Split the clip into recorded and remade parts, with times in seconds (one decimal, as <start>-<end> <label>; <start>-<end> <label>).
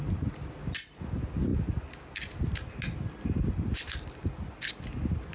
0.0-5.3 recorded